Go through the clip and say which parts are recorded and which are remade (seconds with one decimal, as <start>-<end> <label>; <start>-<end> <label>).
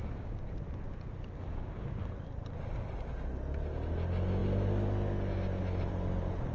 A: 0.0-0.5 remade; 0.5-1.5 recorded; 1.5-2.0 remade; 2.0-6.5 recorded